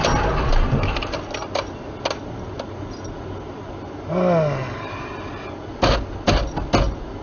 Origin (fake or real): real